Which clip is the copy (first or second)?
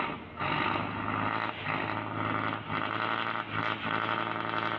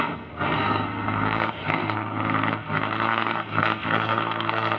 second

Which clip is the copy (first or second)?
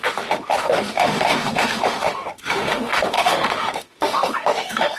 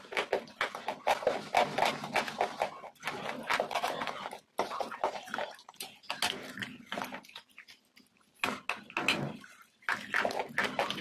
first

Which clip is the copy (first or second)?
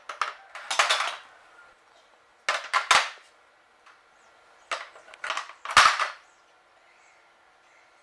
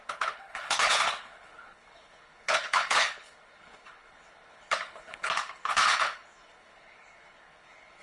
second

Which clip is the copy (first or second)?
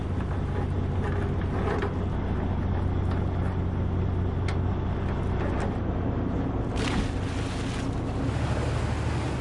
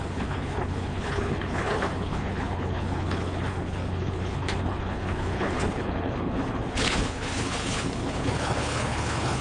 second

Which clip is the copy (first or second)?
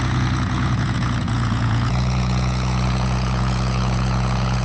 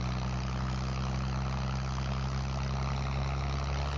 first